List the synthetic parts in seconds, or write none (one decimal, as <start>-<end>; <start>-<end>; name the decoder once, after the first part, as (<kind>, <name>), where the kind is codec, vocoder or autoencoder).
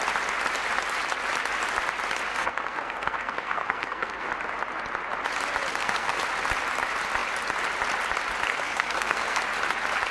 2.3-4.3 (codec, SNAC); 5.7-6.2; 8.5-9.4